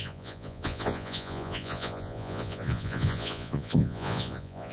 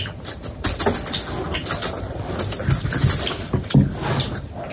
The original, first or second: second